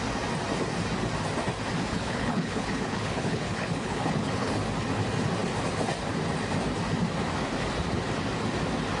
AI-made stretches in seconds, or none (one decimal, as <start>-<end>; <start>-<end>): 1.9-4.5